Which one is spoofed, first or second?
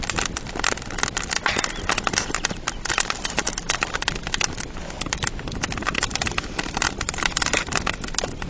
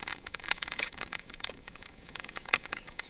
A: second